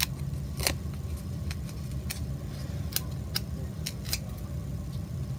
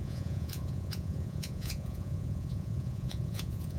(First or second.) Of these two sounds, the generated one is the second